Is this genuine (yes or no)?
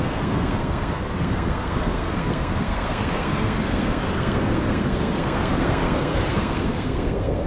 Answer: no